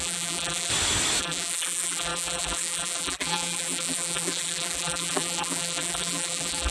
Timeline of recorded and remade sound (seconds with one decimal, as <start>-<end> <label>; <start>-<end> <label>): 0.0-0.7 remade; 0.7-1.2 recorded; 1.2-6.7 remade